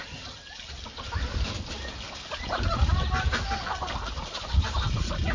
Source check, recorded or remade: recorded